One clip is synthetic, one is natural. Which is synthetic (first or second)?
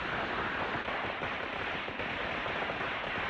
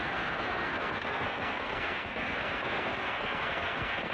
second